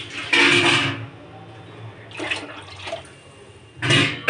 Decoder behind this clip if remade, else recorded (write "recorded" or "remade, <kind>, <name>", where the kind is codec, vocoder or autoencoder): recorded